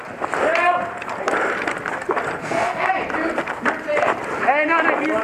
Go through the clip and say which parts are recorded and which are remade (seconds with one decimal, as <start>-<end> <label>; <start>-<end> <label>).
0.0-2.4 recorded; 2.4-2.9 remade; 2.9-5.2 recorded